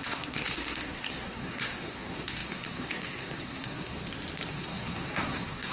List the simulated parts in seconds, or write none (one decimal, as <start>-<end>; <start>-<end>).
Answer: 0.0-4.0; 4.5-5.7